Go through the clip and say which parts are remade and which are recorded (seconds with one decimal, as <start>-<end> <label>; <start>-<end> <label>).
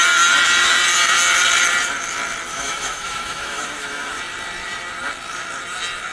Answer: 0.0-2.5 recorded; 2.5-4.2 remade; 4.2-6.1 recorded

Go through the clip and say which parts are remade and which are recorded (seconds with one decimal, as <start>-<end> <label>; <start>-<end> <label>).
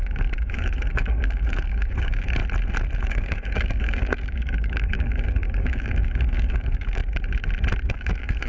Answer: 0.0-2.4 remade; 2.4-3.0 recorded; 3.0-7.0 remade; 7.0-7.9 recorded; 7.9-8.5 remade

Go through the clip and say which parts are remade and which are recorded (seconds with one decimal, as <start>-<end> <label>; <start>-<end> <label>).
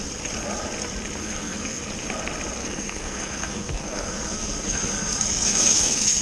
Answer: 0.0-1.2 recorded; 1.2-1.9 remade; 1.9-2.6 recorded; 2.6-6.2 remade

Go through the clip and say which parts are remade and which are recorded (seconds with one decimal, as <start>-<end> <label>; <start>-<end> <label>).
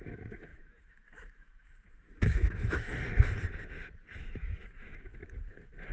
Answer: 0.0-2.9 remade; 2.9-4.2 recorded; 4.2-5.1 remade; 5.1-5.9 recorded